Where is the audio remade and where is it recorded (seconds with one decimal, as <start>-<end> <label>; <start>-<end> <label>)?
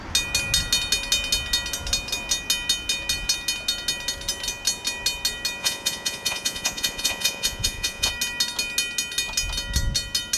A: 0.0-5.6 recorded; 5.6-8.1 remade; 8.1-10.4 recorded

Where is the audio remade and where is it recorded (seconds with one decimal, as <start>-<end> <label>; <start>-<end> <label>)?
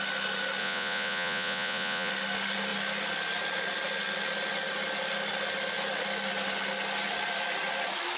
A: 0.0-0.6 recorded; 0.6-2.1 remade; 2.1-8.2 recorded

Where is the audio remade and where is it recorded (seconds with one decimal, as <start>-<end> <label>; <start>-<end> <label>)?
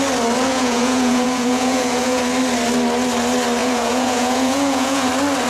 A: 0.0-0.5 recorded; 0.5-2.2 remade; 2.2-3.6 recorded; 3.6-5.1 remade; 5.1-5.5 recorded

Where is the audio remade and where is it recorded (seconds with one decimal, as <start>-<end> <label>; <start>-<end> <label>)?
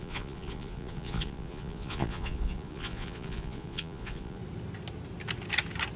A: 0.0-4.4 remade; 4.4-6.0 recorded